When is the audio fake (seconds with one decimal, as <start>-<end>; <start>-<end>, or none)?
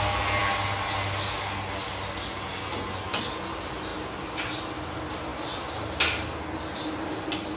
none